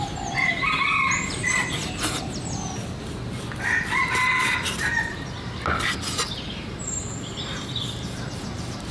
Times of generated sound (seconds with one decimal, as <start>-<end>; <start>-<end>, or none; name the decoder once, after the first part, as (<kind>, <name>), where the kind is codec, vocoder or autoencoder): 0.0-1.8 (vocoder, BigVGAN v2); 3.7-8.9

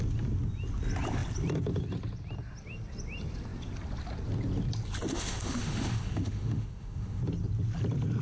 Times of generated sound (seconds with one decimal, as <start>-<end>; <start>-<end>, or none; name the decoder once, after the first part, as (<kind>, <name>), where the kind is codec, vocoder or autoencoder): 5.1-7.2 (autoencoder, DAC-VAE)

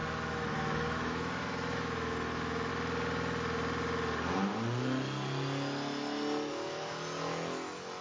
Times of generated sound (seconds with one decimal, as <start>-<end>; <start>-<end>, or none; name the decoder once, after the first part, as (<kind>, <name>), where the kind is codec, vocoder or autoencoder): 0.0-2.7 (autoencoder, DAC-VAE); 6.5-8.0

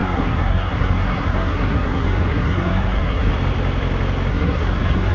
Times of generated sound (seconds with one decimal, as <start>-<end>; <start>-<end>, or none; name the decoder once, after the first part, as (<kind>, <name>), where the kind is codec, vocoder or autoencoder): 0.0-3.3 (codec, SNAC); 4.3-5.1